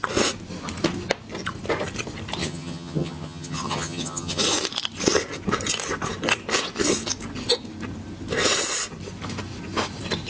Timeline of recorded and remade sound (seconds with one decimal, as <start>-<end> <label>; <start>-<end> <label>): 0.0-2.4 recorded; 2.4-4.4 remade; 4.4-10.3 recorded